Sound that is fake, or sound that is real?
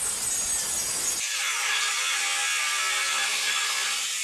real